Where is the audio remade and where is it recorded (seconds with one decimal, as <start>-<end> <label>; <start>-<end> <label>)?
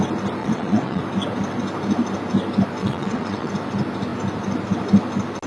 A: 0.0-0.4 recorded; 0.4-1.0 remade; 1.0-2.8 recorded; 2.8-3.5 remade; 3.5-5.5 recorded